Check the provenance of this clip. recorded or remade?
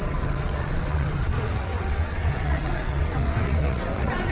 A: remade